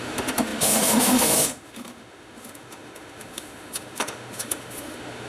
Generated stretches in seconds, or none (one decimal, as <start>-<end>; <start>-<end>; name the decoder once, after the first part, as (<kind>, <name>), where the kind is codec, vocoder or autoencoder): 0.0-5.3 (autoencoder, DAC-VAE)